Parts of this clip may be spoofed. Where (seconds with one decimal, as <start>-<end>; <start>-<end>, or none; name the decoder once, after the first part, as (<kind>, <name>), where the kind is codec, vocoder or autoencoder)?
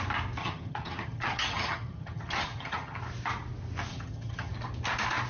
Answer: 0.4-3.0 (vocoder, HiFi-GAN); 3.9-4.5